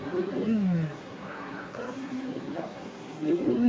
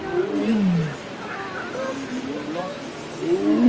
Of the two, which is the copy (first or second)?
first